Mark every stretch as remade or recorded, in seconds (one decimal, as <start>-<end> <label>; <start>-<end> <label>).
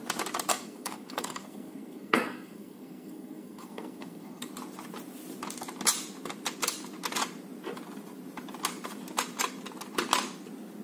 0.0-0.5 recorded; 0.5-4.5 remade; 4.5-10.8 recorded